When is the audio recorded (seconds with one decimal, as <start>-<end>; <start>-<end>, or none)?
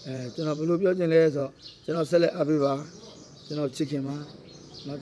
0.8-1.4; 4.1-5.0